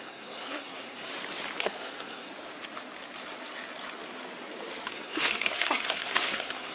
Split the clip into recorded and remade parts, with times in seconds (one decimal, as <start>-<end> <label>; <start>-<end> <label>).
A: 0.0-1.1 remade; 1.1-1.6 recorded; 1.6-2.3 remade; 2.3-4.9 recorded; 4.9-6.7 remade